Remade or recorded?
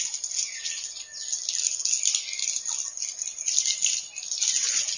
recorded